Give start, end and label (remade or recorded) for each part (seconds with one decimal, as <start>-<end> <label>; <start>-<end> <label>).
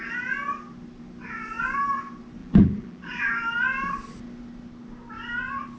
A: 0.0-2.4 recorded; 2.4-3.3 remade; 3.3-5.8 recorded